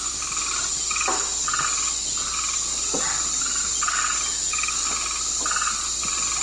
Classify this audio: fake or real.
real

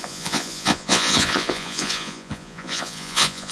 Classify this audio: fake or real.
fake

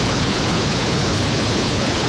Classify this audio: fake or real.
fake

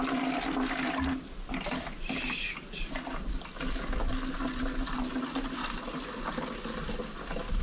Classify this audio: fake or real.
real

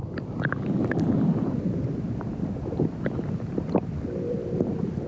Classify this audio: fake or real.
real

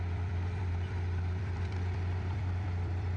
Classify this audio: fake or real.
fake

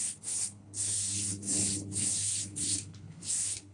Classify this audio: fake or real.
fake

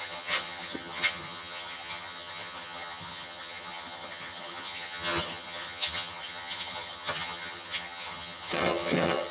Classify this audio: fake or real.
fake